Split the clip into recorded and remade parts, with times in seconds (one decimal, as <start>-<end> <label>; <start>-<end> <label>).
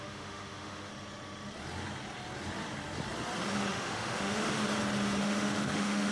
0.0-0.9 remade; 0.9-3.7 recorded; 3.7-4.6 remade; 4.6-5.2 recorded; 5.2-6.1 remade